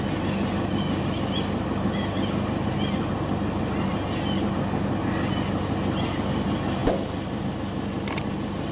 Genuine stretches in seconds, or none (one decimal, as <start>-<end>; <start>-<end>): 0.0-8.7